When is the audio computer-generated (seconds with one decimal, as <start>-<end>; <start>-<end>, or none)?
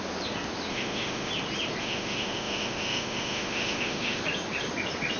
0.7-1.3; 1.8-4.2